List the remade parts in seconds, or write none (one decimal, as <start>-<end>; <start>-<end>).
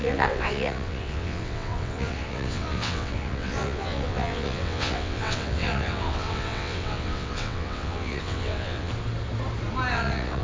0.0-8.9; 9.9-10.4